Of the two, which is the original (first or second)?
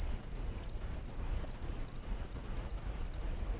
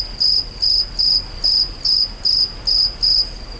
second